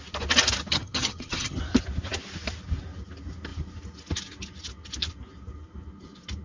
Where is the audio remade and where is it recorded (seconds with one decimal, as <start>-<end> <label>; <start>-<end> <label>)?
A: 0.0-0.7 recorded; 0.7-1.6 remade; 1.6-6.4 recorded